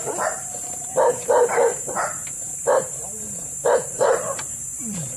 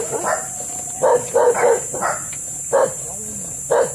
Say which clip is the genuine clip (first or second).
second